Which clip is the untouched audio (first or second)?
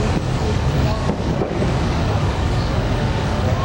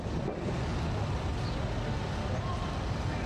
second